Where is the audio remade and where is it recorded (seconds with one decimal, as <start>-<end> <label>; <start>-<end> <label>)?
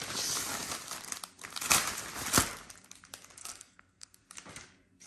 0.0-3.4 recorded; 3.4-4.2 remade; 4.2-5.1 recorded